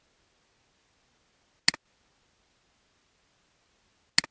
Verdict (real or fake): real